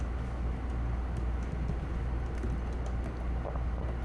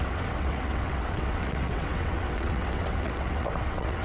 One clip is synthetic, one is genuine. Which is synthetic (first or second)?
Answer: second